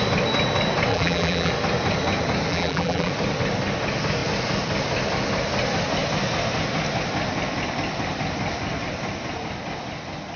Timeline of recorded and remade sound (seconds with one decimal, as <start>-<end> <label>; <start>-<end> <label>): 0.0-0.9 recorded; 0.9-1.5 remade; 1.5-2.5 recorded; 2.5-3.1 remade; 3.1-10.4 recorded